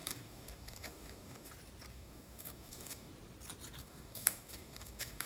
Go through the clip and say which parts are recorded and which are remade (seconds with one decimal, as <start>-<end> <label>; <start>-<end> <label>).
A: 0.0-1.5 remade; 1.5-1.9 recorded; 1.9-3.1 remade; 3.1-3.8 recorded; 3.8-5.3 remade